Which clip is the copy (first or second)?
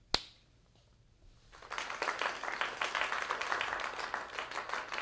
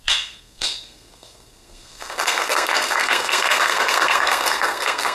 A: second